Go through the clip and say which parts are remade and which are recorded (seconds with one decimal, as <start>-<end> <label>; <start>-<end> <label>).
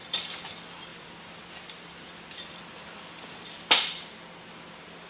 0.0-0.5 remade; 0.5-0.9 recorded; 0.9-2.6 remade; 2.6-5.1 recorded